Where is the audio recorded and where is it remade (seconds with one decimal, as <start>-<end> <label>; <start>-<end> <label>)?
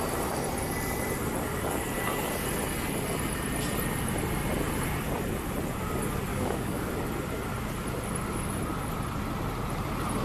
0.0-6.3 recorded; 6.3-6.9 remade; 6.9-10.2 recorded